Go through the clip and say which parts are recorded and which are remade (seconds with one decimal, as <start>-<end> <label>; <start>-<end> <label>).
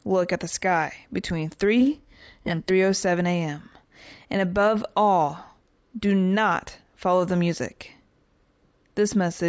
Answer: 0.0-1.8 recorded; 1.8-2.7 remade; 2.7-9.5 recorded